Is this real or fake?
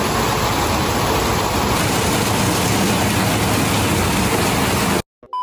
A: real